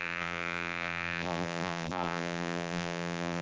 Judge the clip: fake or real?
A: fake